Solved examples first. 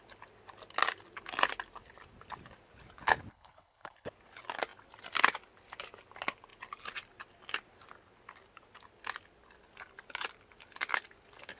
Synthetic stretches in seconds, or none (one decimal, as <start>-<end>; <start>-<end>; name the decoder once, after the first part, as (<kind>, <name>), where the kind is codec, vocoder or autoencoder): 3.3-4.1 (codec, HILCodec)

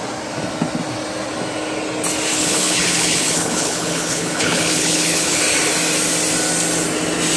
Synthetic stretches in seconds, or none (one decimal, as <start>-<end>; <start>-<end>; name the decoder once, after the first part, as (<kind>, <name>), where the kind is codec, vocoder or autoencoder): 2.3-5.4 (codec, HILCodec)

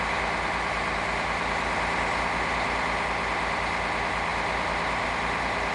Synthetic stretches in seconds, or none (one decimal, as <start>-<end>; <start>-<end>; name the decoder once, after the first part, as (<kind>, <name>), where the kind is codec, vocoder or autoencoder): none